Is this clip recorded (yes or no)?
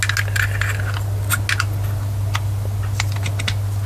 yes